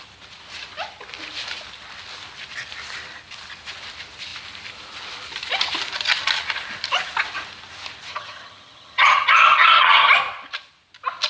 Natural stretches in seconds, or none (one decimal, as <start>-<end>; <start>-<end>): 0.0-8.1; 10.1-11.3